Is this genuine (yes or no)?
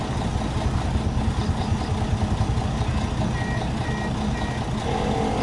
yes